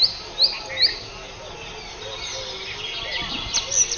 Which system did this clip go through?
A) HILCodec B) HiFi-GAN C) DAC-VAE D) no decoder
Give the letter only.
D